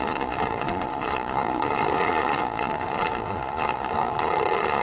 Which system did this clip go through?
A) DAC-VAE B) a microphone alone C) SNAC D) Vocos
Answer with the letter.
D